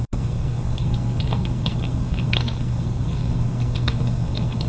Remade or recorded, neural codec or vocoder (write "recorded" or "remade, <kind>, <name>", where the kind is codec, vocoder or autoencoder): remade, codec, SNAC